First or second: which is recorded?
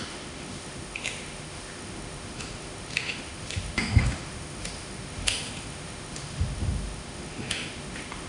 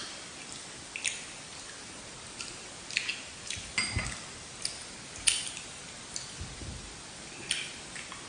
second